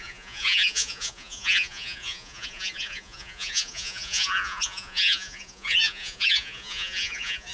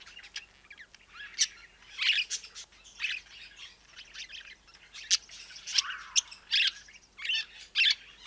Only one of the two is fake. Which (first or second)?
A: first